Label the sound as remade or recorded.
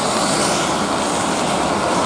recorded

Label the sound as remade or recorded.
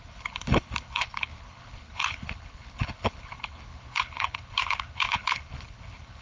remade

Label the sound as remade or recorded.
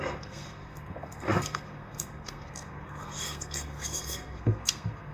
remade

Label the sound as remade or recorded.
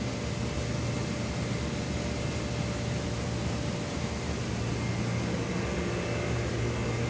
recorded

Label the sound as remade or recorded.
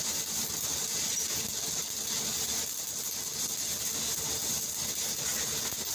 recorded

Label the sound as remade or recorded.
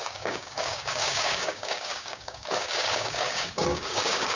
remade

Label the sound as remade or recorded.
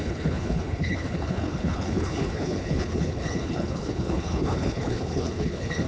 remade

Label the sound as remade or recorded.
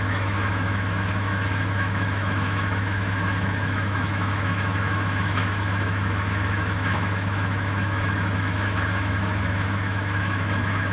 remade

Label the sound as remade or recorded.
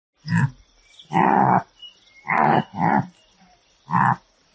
recorded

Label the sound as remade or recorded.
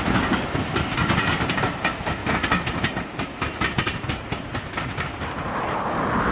recorded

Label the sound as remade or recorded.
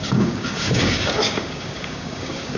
remade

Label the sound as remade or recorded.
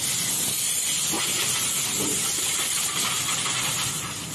recorded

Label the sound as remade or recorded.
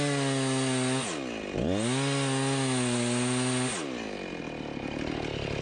recorded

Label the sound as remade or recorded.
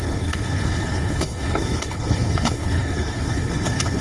remade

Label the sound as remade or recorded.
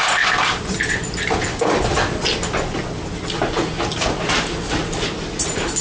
recorded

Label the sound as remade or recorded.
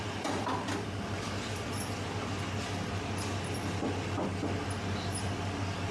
recorded